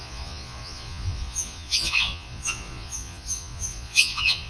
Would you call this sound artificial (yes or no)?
yes